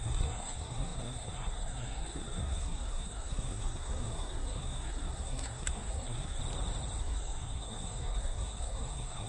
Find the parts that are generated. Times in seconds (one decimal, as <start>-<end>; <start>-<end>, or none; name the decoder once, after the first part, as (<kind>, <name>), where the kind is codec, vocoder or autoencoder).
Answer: 0.0-6.4 (codec, SNAC); 7.0-9.3